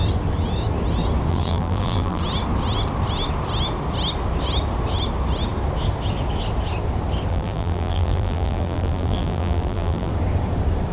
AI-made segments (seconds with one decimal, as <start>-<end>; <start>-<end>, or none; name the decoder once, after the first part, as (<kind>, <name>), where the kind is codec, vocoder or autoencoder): 1.3-2.2 (vocoder, BigVGAN v2); 7.3-10.1